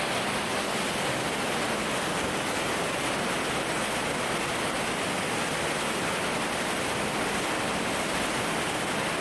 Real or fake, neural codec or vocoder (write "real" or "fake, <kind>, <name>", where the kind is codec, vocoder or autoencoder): real